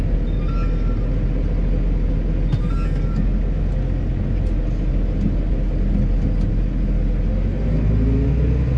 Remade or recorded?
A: recorded